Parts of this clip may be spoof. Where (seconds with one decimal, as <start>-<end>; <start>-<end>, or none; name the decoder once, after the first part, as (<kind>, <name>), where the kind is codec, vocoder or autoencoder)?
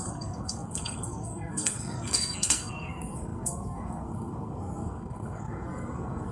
0.0-6.3 (codec, SNAC)